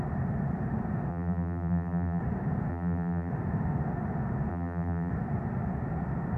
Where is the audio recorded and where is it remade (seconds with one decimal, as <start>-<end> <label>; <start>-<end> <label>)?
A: 0.0-1.1 recorded; 1.1-2.2 remade; 2.2-2.7 recorded; 2.7-3.3 remade; 3.3-4.5 recorded; 4.5-5.1 remade; 5.1-6.4 recorded